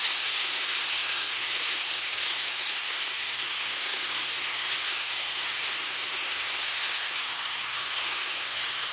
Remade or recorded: remade